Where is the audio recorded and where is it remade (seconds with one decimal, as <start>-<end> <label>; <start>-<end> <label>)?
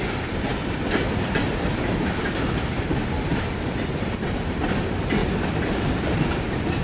0.0-0.5 recorded; 0.5-2.8 remade; 2.8-5.2 recorded; 5.2-6.1 remade; 6.1-6.8 recorded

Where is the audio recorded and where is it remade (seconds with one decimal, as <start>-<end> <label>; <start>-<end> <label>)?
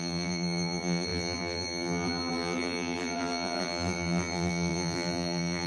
0.0-5.7 remade